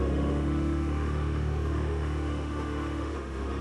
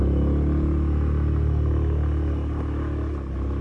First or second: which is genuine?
second